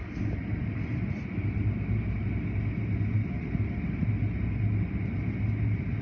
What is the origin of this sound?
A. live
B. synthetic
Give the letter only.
A